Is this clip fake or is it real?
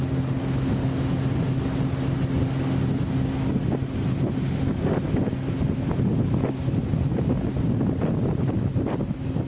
real